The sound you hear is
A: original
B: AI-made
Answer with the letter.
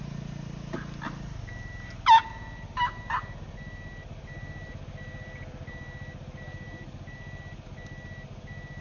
A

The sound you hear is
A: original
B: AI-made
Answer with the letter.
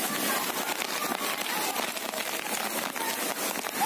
A